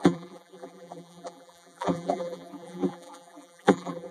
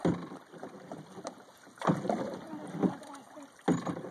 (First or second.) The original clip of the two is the second